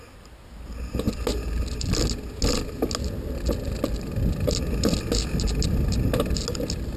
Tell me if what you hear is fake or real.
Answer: real